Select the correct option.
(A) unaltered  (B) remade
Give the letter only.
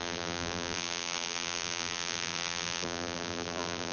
B